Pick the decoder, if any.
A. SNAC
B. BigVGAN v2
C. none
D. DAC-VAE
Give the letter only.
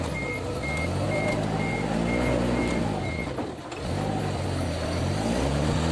C